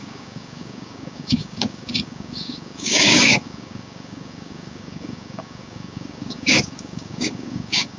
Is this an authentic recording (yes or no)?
no